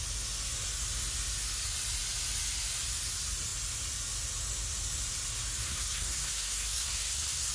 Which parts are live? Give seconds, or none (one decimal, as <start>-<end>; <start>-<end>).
0.0-5.6